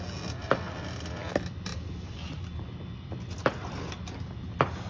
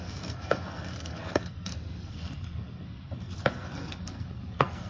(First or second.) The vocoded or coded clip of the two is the second